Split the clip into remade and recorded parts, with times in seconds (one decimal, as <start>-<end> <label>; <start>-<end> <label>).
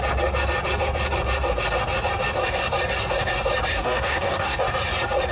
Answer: 0.0-3.7 recorded; 3.7-4.6 remade; 4.6-5.3 recorded